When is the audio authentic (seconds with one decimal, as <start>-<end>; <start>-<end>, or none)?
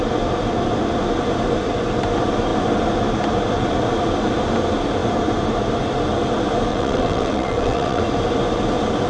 0.0-6.7; 8.0-9.1